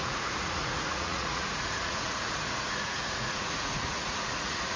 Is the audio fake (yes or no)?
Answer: yes